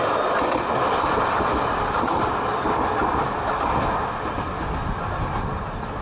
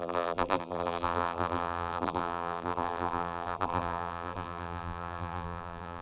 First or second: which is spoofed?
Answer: second